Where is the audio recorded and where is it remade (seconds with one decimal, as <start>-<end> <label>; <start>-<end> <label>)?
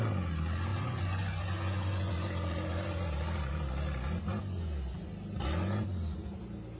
0.0-0.7 recorded; 0.7-2.1 remade; 2.1-6.8 recorded